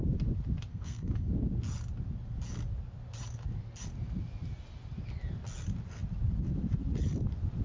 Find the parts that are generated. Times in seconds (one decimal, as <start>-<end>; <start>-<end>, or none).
0.7-1.3